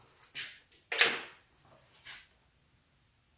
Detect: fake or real real